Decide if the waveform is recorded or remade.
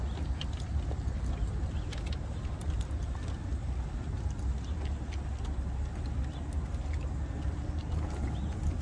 recorded